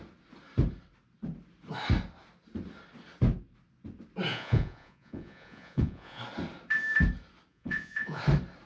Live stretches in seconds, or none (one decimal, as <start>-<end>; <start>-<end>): 0.0-4.3; 6.2-7.5; 8.2-8.7